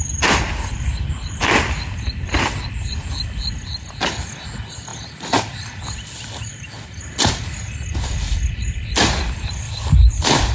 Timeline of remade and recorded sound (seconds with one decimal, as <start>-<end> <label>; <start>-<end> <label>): 0.0-10.5 recorded